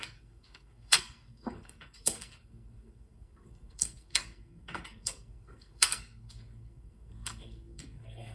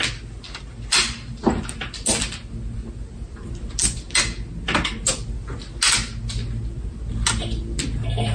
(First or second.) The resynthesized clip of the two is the first